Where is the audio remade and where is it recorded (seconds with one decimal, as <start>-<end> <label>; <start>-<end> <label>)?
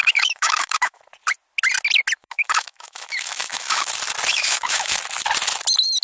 0.0-1.0 remade; 1.0-2.2 recorded; 2.2-3.9 remade; 3.9-4.3 recorded; 4.3-5.0 remade; 5.0-6.0 recorded